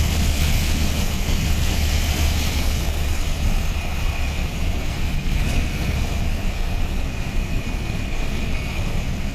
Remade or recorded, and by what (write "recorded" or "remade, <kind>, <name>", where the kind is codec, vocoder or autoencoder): remade, codec, SNAC